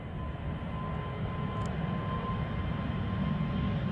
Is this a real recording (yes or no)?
yes